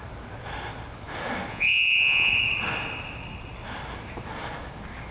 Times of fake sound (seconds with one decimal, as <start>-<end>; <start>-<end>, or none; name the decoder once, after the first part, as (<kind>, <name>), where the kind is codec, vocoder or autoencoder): 1.5-2.3 (vocoder, Vocos)